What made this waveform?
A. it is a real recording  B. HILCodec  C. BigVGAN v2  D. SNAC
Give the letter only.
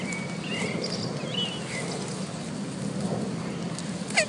A